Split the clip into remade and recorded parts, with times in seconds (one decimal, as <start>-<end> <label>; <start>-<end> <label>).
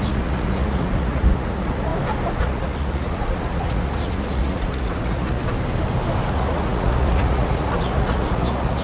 0.0-1.9 remade; 1.9-2.4 recorded; 2.4-5.4 remade; 5.4-6.3 recorded; 6.3-8.8 remade